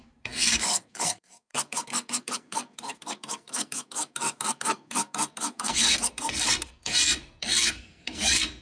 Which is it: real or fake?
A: fake